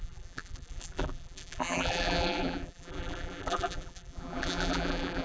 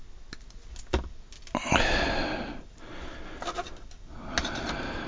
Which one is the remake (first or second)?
first